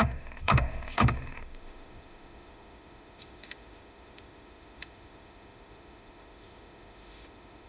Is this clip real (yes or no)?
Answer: no